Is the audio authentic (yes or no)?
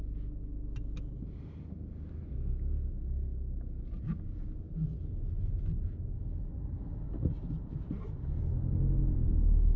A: yes